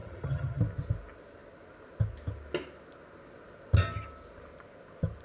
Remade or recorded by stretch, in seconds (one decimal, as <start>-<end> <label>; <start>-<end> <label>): 0.0-0.6 remade; 0.6-5.2 recorded